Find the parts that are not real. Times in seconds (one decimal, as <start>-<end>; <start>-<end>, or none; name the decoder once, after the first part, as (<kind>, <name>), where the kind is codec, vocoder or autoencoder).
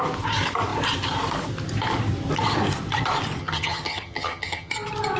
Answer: 3.4-4.7 (vocoder, HiFi-GAN)